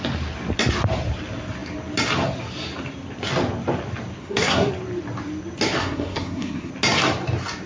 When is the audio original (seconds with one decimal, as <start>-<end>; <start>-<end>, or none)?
0.0-4.2; 4.7-5.8; 6.7-7.7